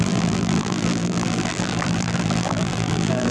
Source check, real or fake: fake